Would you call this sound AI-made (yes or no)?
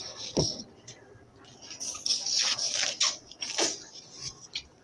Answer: no